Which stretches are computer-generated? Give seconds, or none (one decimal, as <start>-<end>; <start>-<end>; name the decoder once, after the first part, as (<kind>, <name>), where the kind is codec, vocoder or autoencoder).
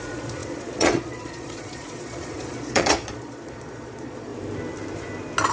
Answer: 0.0-4.3 (vocoder, Vocos)